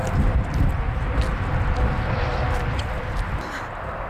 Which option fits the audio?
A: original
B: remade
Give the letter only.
A